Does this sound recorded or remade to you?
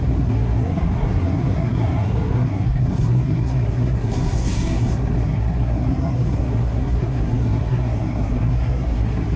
remade